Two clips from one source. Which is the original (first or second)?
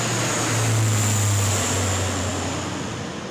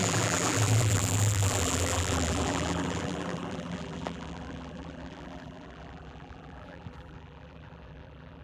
first